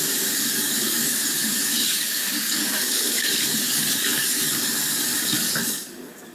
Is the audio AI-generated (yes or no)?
yes